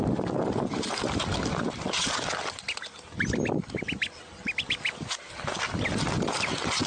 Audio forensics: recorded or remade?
recorded